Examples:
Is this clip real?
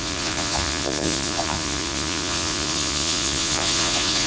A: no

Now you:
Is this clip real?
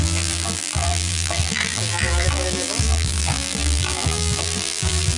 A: no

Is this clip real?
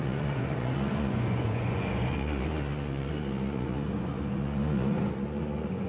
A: no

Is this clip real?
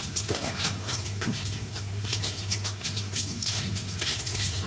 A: no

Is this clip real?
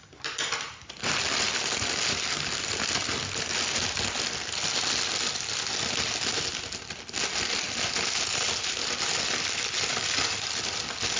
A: yes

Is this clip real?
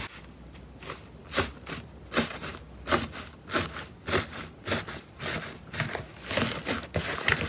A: yes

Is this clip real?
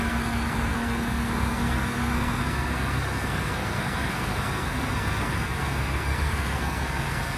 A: no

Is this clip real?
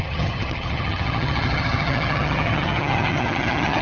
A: no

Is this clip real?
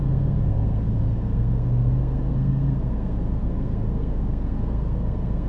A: no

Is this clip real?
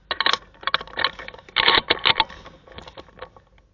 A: yes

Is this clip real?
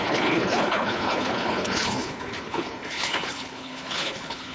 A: no